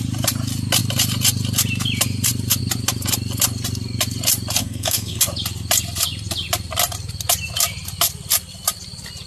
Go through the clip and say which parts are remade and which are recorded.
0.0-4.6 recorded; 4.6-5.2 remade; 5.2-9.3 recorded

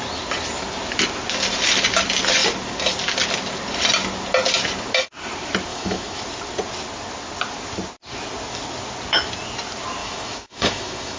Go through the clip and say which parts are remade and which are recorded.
0.0-5.7 recorded; 5.7-6.2 remade; 6.2-10.0 recorded; 10.0-11.2 remade

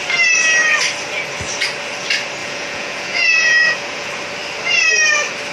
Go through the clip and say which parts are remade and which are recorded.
0.0-2.4 recorded; 2.4-4.1 remade; 4.1-5.5 recorded

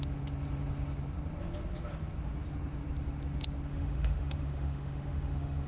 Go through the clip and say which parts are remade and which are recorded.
0.0-3.7 recorded; 3.7-5.7 remade